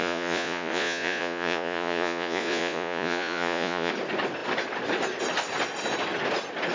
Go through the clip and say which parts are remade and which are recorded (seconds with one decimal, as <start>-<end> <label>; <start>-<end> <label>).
0.0-3.9 remade; 3.9-6.7 recorded